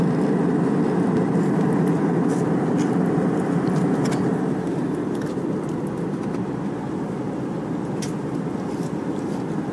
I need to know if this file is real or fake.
real